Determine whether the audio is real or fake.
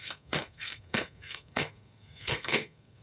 fake